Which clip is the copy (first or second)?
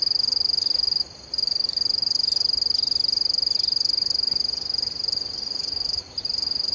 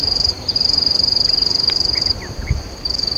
second